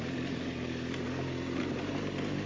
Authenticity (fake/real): real